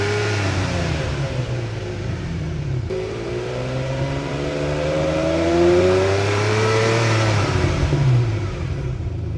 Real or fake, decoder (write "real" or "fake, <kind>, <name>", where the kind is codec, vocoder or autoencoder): fake, vocoder, BigVGAN v2